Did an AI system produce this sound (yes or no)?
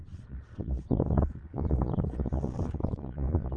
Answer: yes